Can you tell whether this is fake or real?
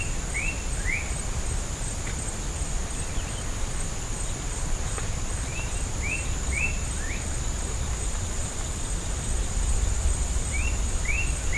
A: fake